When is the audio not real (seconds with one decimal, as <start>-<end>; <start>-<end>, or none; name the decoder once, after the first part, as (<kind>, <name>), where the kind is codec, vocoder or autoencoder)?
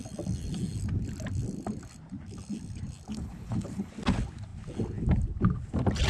3.1-3.9 (codec, HILCodec)